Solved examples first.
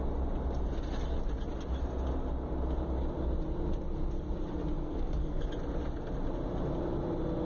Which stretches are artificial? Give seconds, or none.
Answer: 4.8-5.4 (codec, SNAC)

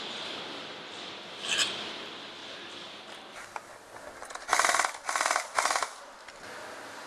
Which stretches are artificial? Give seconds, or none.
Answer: none